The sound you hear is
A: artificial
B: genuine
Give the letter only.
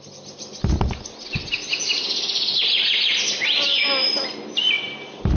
B